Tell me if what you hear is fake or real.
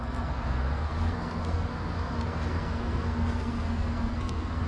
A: fake